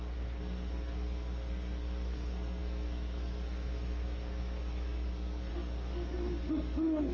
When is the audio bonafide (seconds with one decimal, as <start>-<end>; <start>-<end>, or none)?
none